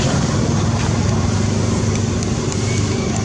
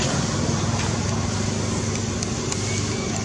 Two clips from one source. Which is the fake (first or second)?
first